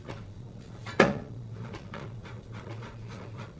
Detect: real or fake fake